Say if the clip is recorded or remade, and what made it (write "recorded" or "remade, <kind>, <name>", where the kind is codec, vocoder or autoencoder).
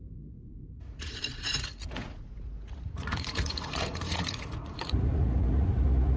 remade, vocoder, Vocos